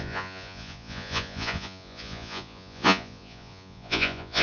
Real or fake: fake